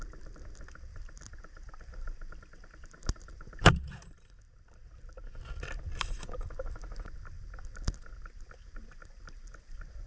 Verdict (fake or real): real